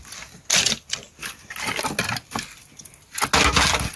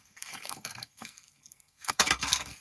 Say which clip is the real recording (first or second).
first